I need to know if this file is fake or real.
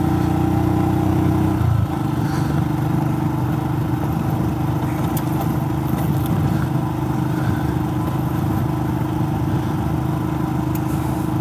real